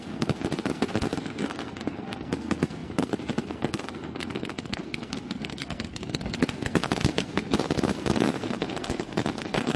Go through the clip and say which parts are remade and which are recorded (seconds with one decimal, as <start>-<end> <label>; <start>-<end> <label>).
0.0-9.8 remade